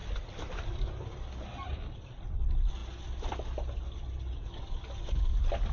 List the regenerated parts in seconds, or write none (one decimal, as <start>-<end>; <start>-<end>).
none